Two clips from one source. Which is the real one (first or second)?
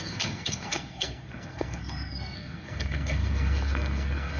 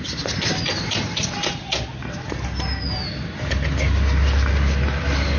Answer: second